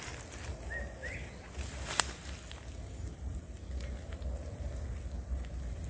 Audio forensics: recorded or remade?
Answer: recorded